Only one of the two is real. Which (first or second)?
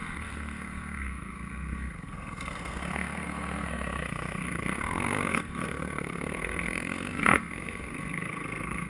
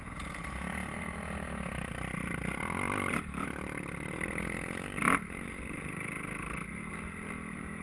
second